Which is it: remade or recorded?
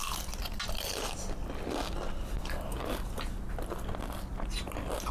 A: recorded